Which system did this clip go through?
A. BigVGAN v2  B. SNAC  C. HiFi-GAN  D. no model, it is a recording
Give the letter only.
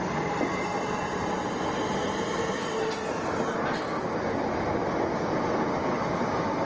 D